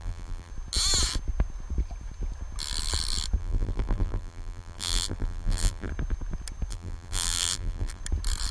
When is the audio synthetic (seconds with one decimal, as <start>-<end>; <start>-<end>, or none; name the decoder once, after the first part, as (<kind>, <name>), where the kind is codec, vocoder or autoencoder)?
0.0-0.5 (vocoder, BigVGAN v2); 3.4-5.9; 6.7-8.0